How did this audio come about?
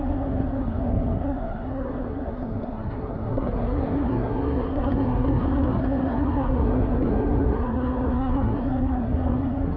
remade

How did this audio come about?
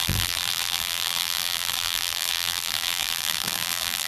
remade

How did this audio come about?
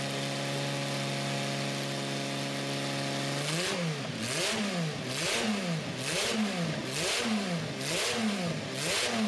recorded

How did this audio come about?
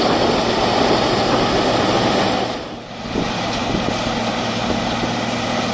recorded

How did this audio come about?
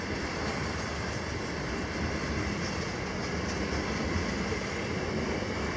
recorded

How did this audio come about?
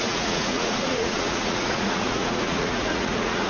remade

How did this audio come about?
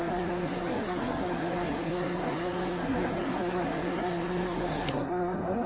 remade